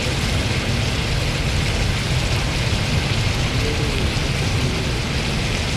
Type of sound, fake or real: real